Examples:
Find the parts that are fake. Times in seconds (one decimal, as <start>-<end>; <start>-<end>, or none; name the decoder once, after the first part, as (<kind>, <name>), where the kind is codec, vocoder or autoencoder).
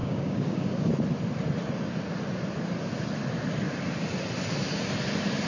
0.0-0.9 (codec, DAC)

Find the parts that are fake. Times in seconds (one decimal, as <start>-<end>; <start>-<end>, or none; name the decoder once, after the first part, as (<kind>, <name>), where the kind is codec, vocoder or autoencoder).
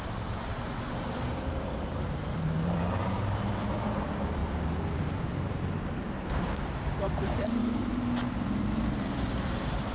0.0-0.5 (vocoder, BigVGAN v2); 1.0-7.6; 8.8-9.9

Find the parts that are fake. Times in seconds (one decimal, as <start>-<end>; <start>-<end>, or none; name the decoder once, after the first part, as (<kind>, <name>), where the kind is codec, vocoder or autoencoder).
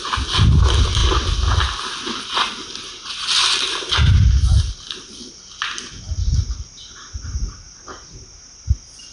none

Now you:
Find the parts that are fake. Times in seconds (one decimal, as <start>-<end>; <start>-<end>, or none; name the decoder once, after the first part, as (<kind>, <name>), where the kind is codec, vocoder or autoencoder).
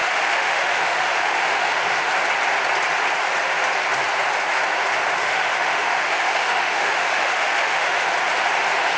0.0-2.1 (autoencoder, DAC-VAE); 5.2-8.1